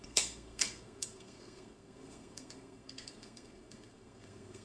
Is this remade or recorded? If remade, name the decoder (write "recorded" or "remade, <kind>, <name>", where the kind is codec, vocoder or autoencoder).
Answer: remade, codec, SNAC